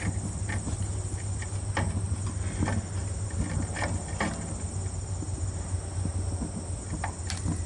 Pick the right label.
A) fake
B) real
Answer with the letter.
B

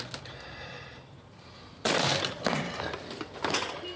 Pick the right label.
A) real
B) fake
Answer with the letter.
A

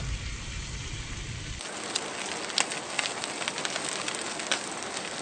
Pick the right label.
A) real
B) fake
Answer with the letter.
A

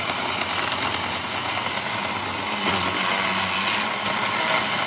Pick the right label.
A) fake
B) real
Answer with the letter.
B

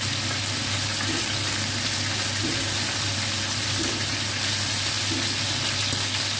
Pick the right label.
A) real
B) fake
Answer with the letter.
A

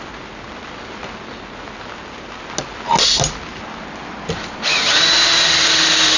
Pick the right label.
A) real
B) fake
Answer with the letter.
A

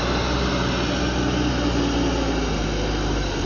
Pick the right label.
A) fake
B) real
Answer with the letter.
B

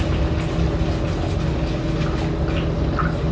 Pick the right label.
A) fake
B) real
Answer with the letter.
B